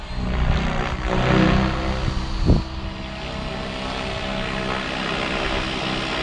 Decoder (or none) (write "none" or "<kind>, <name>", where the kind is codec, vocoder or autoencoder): none